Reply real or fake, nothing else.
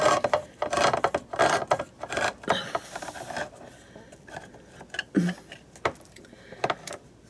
real